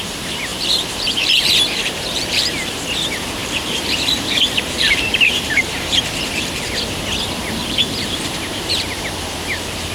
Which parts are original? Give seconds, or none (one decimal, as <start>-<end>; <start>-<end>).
0.0-0.5; 2.7-3.4; 6.6-7.6; 8.9-9.9